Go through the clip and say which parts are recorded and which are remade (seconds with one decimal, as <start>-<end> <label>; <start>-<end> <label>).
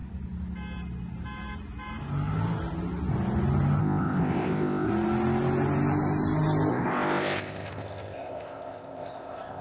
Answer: 0.0-3.8 recorded; 3.8-4.9 remade; 4.9-6.7 recorded; 6.7-9.6 remade